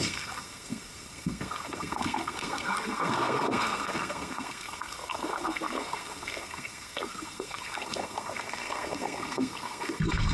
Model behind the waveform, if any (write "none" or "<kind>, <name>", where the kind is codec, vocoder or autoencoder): codec, SNAC